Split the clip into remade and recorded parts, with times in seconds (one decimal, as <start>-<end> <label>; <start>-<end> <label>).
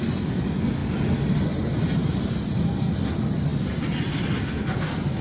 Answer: 0.0-5.2 recorded